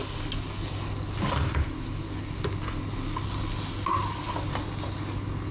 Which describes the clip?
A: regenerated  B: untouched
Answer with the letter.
B